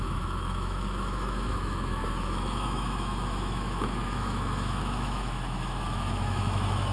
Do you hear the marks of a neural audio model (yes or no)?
yes